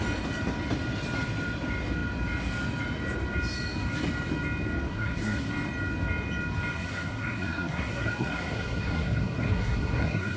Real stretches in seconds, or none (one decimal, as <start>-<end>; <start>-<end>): 0.0-4.9; 5.5-6.7